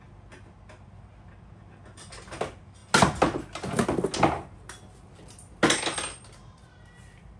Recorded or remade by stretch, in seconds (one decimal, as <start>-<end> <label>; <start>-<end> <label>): 0.0-7.4 recorded